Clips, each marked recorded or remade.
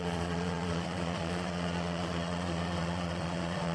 remade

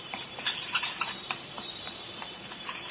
remade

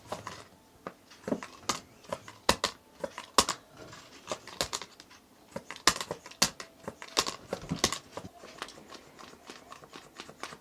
recorded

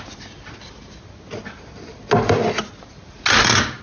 recorded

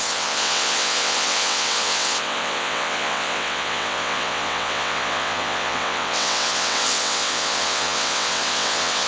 remade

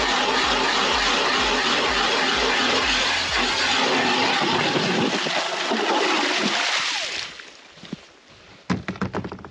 recorded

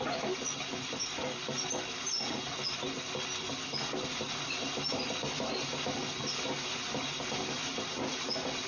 recorded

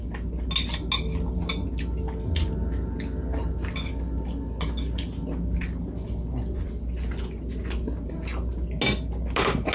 recorded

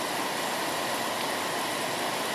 recorded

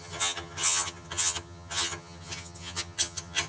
remade